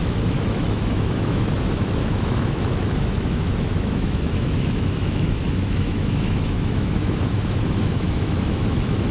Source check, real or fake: fake